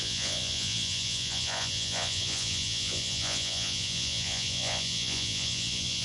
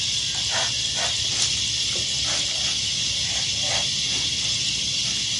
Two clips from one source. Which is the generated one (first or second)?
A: first